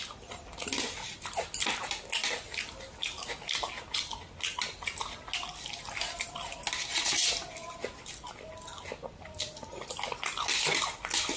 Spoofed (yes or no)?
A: no